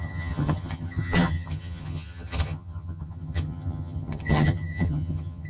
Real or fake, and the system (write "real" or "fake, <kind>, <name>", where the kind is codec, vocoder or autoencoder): fake, vocoder, HiFi-GAN